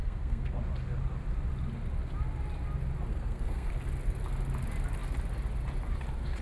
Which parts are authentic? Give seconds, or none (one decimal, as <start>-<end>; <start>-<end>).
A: 0.6-3.1; 3.7-6.4

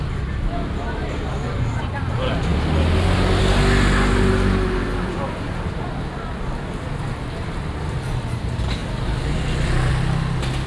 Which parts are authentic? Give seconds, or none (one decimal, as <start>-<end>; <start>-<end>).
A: 0.0-4.9; 6.0-8.8; 9.9-10.7

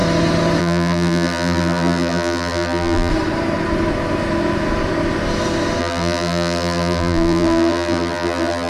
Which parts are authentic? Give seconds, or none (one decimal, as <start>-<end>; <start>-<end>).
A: 0.0-0.6; 3.1-5.8

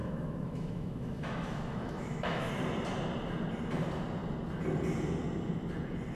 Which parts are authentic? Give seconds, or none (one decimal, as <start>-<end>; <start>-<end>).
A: 2.5-6.2